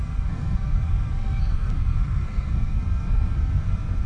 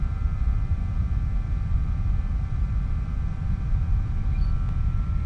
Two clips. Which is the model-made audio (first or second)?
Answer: first